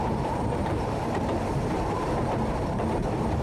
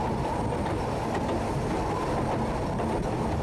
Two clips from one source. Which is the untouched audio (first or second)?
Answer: second